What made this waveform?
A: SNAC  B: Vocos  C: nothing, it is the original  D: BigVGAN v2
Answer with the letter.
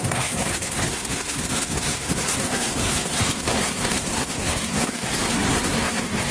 A